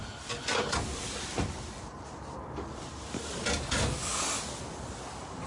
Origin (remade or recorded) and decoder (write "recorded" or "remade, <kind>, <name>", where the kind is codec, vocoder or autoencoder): recorded